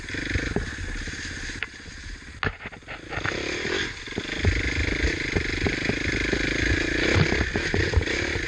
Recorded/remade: recorded